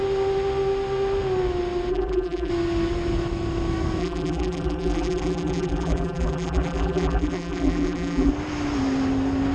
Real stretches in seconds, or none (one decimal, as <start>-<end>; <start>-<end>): 0.0-1.9; 2.5-4.0; 8.3-9.5